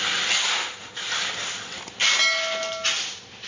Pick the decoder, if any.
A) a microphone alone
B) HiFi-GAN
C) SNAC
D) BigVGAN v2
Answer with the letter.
A